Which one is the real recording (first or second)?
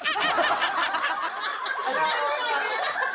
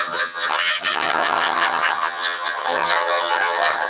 first